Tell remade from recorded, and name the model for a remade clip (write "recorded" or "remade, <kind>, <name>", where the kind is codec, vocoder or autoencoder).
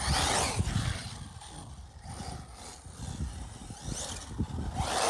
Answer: recorded